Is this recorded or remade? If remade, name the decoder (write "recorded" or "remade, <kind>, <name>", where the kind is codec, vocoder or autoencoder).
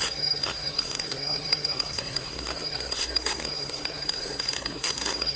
remade, codec, SNAC